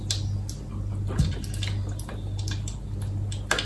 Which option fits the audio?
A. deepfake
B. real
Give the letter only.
B